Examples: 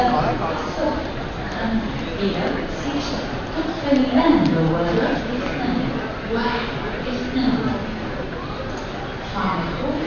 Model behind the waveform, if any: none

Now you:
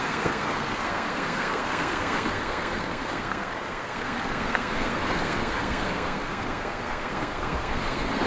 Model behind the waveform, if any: codec, SNAC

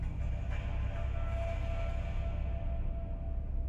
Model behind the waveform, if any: none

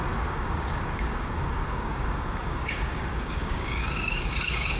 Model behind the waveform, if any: codec, DAC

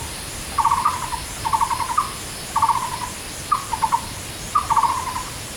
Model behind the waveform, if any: vocoder, BigVGAN v2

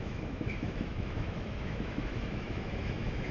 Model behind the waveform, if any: autoencoder, DAC-VAE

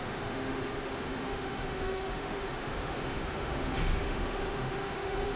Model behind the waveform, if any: autoencoder, DAC-VAE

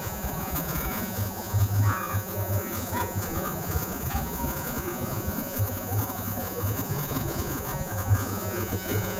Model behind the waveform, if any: vocoder, Vocos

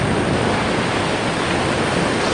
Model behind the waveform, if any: none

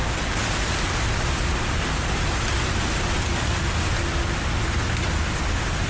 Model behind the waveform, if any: none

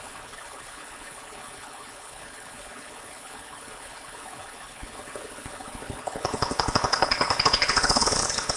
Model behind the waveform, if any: codec, HILCodec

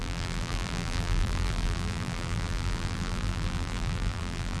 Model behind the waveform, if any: vocoder, BigVGAN v2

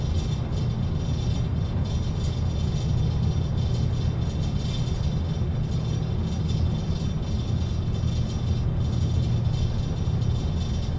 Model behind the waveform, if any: none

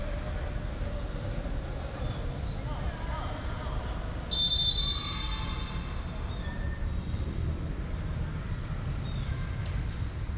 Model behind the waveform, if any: none